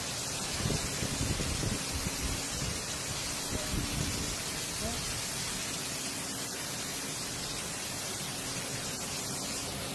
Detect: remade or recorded recorded